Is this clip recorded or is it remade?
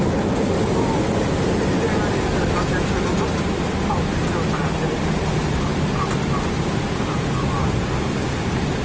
recorded